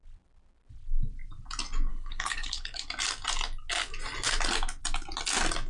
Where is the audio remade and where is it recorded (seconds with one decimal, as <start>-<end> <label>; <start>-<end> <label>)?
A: 0.0-1.9 recorded; 1.9-2.9 remade; 2.9-5.7 recorded